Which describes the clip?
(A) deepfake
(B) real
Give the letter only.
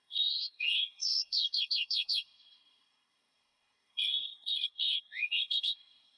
A